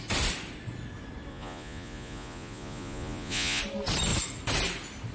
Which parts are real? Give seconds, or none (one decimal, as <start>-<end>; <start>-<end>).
0.0-1.3; 3.6-5.1